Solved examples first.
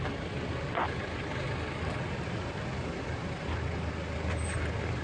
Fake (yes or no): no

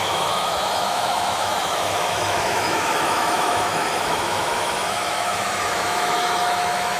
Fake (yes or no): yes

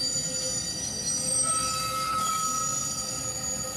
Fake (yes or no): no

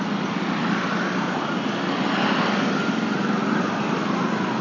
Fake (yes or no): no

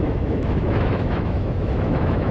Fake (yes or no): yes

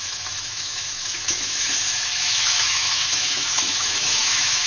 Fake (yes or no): yes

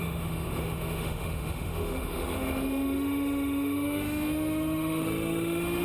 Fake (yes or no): yes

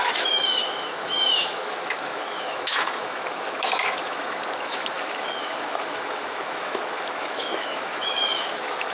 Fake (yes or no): yes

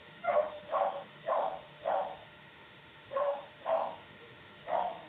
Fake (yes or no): yes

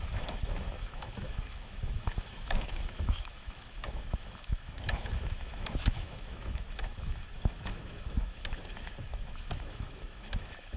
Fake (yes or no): yes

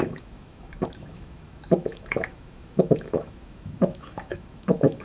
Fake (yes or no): yes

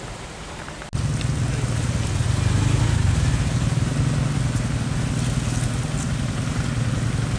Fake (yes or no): no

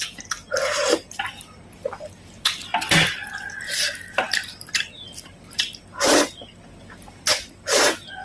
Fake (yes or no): no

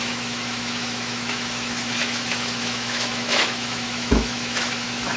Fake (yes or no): yes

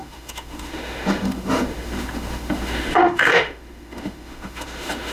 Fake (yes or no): yes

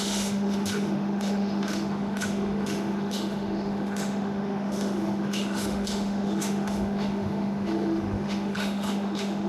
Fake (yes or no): yes